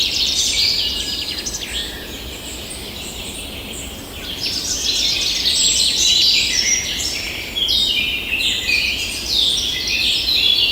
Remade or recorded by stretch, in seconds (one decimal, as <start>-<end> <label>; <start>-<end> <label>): 0.0-1.4 remade; 1.4-10.7 recorded